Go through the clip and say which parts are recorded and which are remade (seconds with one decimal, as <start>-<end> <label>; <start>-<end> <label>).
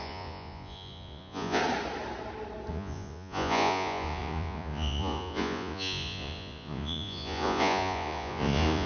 0.0-1.6 remade; 1.6-2.7 recorded; 2.7-8.9 remade